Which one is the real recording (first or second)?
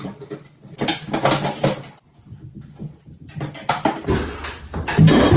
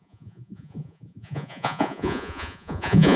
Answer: first